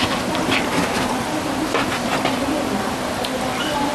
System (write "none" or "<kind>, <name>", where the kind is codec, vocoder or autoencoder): none